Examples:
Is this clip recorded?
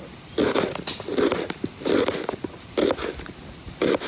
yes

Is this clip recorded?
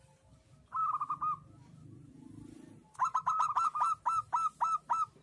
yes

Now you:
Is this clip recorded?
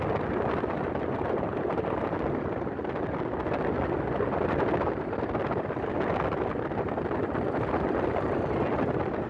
yes